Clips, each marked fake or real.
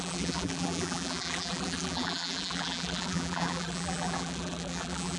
fake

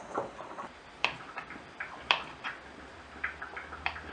fake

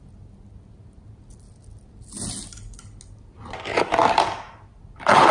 real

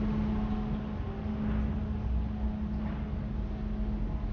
real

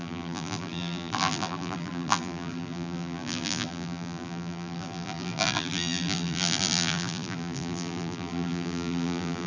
fake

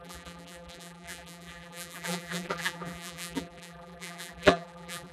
fake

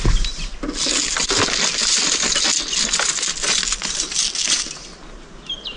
real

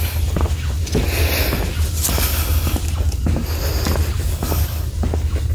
real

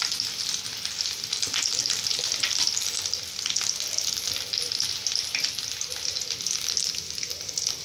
real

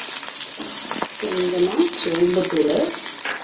real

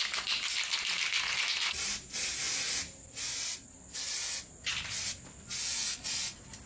real